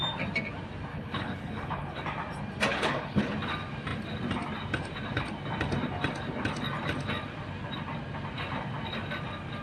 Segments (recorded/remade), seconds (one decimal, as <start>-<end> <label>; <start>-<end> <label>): 0.0-0.9 recorded; 0.9-2.0 remade; 2.0-2.7 recorded; 2.7-3.3 remade; 3.3-9.6 recorded